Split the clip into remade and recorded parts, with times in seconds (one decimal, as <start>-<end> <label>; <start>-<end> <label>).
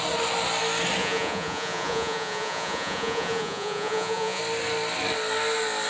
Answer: 0.0-1.0 recorded; 1.0-4.4 remade; 4.4-5.9 recorded